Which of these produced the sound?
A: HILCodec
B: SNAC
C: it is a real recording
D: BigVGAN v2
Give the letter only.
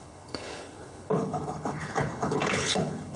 A